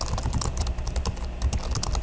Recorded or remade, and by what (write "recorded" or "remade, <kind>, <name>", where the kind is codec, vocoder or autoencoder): recorded